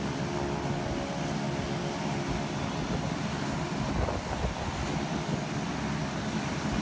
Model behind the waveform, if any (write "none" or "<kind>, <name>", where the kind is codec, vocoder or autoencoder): none